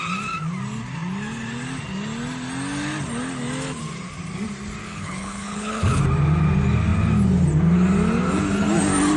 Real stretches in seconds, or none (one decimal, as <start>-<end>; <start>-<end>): 0.0-4.8; 6.0-9.2